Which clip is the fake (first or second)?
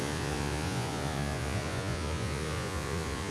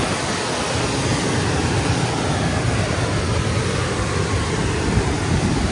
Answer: first